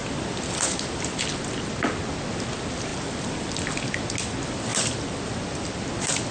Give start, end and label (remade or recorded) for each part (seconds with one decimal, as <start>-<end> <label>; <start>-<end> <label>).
0.0-1.2 remade; 1.2-2.9 recorded; 2.9-4.0 remade; 4.0-4.7 recorded; 4.7-5.8 remade; 5.8-6.3 recorded